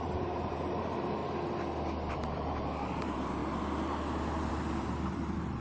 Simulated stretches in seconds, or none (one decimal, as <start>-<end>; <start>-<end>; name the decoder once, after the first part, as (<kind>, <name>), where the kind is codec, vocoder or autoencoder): 0.0-1.2 (vocoder, BigVGAN v2); 2.1-3.4; 4.5-5.6